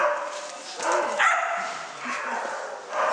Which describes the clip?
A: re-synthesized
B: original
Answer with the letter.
B